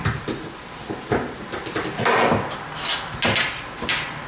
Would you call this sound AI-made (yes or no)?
no